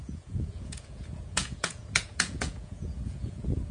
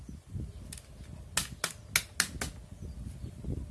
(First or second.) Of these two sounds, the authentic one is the second